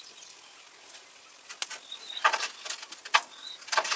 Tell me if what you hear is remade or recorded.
recorded